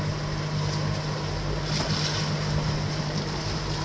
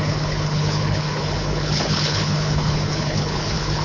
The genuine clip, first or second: first